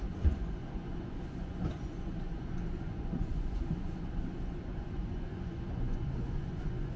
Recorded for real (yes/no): no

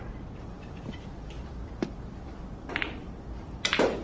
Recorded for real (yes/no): no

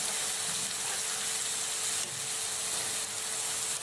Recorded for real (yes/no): yes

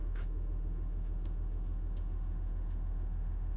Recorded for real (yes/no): no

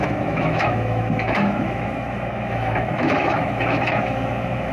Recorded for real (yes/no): no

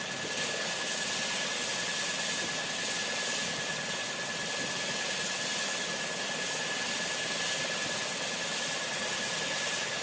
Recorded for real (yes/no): no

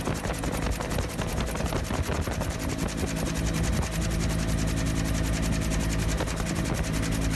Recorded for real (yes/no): yes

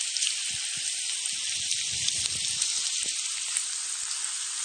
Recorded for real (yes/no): yes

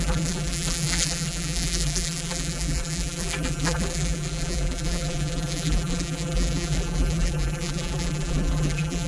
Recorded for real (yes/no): no